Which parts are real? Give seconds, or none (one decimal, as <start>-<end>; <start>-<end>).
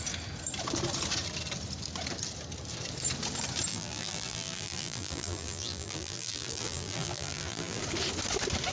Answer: 0.0-3.7; 7.8-8.7